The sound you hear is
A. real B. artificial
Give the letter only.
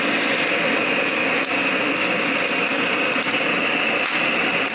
A